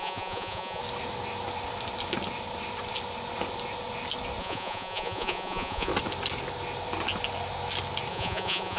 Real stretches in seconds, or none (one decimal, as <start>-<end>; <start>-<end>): 0.8-4.4; 5.9-8.1